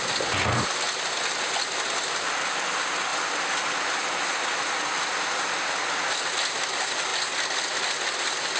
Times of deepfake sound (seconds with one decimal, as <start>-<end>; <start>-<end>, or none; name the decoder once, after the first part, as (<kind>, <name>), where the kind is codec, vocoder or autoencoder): none